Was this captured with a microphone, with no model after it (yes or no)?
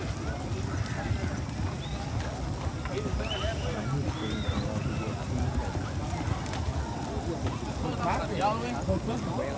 yes